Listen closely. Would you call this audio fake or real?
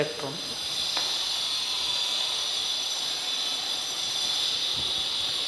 real